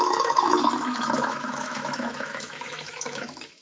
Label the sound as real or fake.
fake